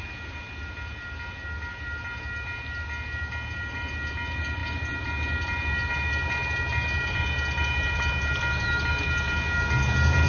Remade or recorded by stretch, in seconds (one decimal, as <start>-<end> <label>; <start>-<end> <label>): 0.0-10.3 recorded